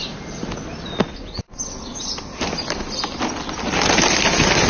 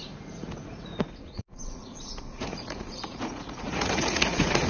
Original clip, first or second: first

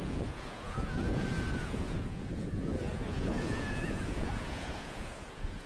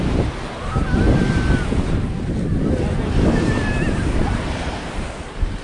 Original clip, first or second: second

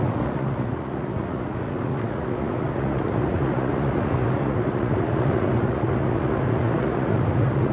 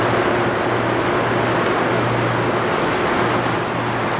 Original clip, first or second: second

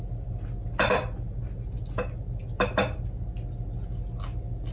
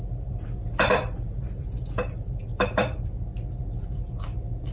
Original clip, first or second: first